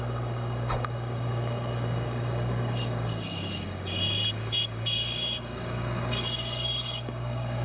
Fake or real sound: fake